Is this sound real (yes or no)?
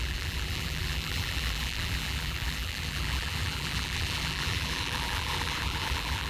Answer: no